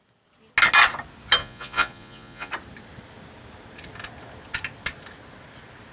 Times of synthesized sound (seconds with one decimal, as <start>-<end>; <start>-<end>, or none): 1.4-2.5